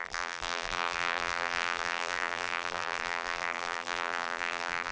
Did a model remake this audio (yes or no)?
yes